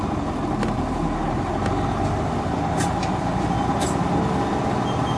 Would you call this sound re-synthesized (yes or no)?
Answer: no